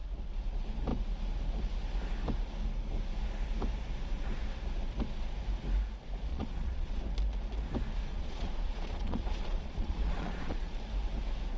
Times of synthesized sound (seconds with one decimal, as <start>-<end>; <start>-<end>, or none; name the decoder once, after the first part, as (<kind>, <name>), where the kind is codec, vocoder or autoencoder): 6.3-7.0 (vocoder, Vocos); 8.1-10.7